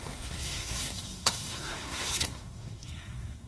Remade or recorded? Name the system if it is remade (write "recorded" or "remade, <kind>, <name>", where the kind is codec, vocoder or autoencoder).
remade, codec, SNAC